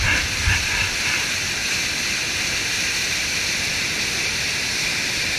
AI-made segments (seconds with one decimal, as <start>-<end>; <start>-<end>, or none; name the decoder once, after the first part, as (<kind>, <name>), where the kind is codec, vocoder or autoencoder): none